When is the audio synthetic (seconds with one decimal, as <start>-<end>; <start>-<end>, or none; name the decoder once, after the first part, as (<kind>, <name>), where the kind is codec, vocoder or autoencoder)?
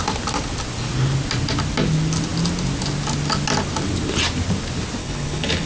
5.0-5.7 (codec, HILCodec)